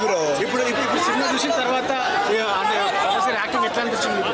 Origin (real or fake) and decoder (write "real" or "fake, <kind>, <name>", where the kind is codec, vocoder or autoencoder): real